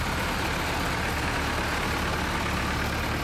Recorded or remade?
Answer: recorded